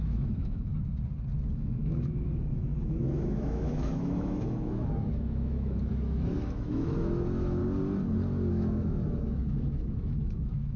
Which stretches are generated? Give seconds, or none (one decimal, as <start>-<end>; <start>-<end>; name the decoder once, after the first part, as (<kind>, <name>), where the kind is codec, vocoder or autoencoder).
0.0-0.7 (autoencoder, DAC-VAE); 1.5-7.6; 8.5-10.8